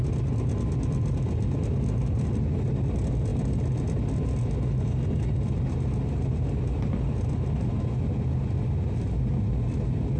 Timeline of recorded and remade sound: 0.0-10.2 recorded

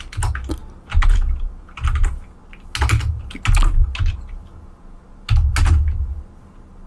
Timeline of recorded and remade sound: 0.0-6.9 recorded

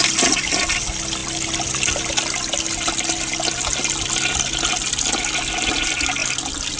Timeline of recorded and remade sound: 0.0-6.8 recorded

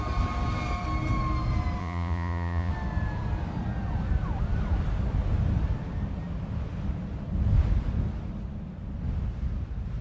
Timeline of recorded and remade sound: 0.0-1.8 recorded; 1.8-2.7 remade; 2.7-10.0 recorded